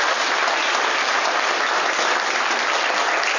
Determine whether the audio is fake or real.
real